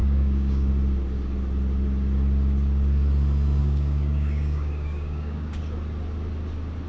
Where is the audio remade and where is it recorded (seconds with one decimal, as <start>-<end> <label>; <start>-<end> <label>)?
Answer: 0.0-0.7 remade; 0.7-3.6 recorded; 3.6-5.6 remade; 5.6-6.9 recorded